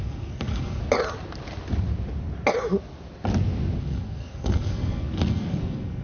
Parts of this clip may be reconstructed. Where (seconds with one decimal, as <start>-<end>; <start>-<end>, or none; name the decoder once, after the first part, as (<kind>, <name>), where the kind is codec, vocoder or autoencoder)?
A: 0.0-0.8 (codec, SNAC); 3.8-6.0